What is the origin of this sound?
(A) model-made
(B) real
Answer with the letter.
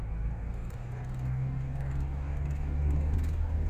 A